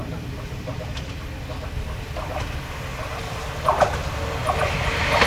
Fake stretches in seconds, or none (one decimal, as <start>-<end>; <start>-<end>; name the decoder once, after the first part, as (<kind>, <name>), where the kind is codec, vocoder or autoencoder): none